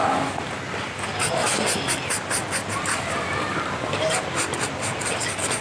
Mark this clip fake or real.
real